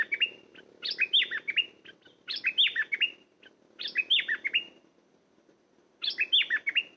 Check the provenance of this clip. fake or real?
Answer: real